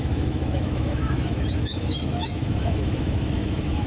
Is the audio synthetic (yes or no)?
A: yes